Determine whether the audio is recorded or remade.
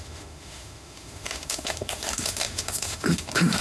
remade